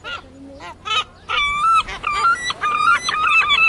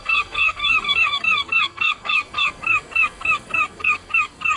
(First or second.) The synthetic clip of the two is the second